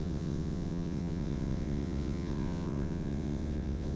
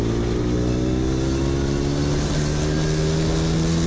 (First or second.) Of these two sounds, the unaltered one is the second